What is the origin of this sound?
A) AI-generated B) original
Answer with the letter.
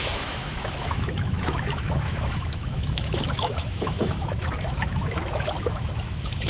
A